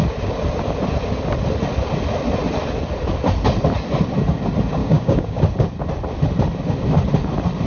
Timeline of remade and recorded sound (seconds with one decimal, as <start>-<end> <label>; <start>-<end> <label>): 0.0-4.8 recorded; 4.8-5.4 remade; 5.4-7.7 recorded